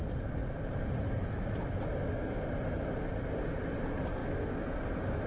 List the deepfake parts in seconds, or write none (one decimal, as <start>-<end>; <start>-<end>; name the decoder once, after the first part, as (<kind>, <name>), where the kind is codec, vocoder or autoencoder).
none